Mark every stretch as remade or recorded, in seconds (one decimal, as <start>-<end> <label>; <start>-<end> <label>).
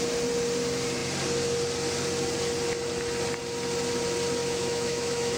0.0-4.4 recorded; 4.4-5.4 remade